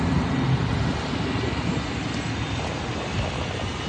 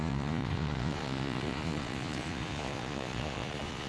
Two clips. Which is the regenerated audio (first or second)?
second